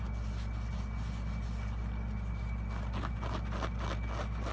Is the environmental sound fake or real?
real